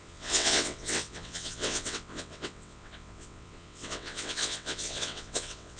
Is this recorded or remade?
remade